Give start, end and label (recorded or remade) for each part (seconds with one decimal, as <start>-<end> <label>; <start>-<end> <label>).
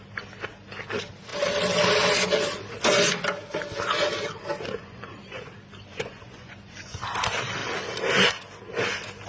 0.0-4.8 recorded; 4.8-5.5 remade; 5.5-5.9 recorded; 5.9-7.0 remade; 7.0-9.3 recorded